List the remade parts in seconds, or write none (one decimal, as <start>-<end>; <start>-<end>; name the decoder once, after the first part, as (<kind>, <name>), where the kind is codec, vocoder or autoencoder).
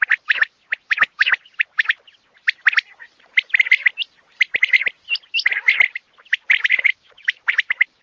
6.7-7.5 (autoencoder, DAC-VAE)